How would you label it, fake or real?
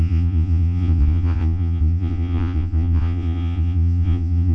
fake